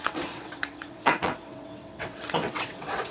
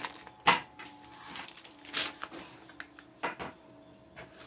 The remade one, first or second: first